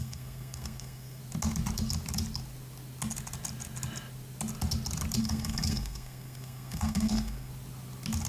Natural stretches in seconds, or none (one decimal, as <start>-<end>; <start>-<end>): 1.2-5.2; 7.5-8.3